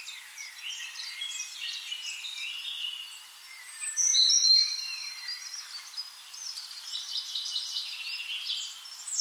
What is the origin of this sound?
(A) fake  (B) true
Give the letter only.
A